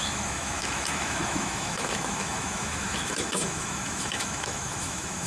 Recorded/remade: remade